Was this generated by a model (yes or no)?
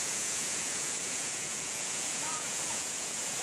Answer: yes